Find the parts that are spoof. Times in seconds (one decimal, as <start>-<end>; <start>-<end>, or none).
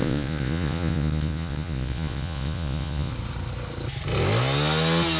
0.0-3.1